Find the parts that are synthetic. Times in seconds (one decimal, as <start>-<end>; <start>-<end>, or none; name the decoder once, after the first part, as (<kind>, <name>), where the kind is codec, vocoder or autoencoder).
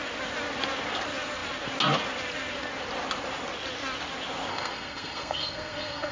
4.5-6.1 (codec, SNAC)